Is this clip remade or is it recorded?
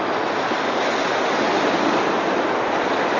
recorded